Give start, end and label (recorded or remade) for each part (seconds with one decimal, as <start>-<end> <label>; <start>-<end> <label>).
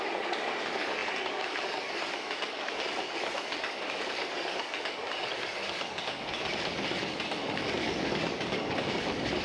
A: 0.0-9.4 remade